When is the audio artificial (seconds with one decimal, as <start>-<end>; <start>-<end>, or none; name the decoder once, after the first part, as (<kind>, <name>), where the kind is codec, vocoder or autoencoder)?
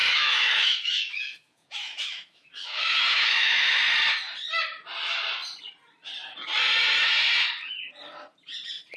0.0-3.7 (autoencoder, DAC-VAE)